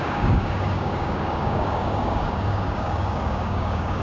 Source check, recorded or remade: remade